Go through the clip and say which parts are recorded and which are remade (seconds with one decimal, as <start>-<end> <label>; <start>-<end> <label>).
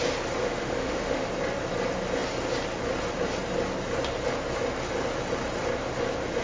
0.0-0.4 recorded; 0.4-1.3 remade; 1.3-6.4 recorded